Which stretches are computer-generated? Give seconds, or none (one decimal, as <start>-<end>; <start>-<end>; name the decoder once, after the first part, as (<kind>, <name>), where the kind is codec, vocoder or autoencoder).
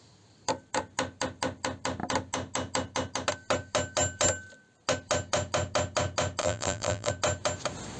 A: 6.4-7.1 (vocoder, BigVGAN v2)